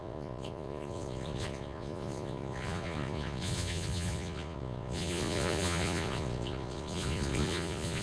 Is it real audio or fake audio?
fake